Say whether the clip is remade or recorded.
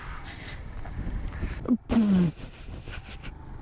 recorded